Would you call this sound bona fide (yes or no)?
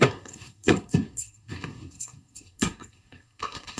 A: no